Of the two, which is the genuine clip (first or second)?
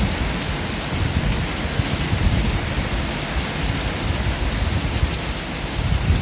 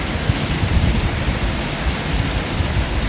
first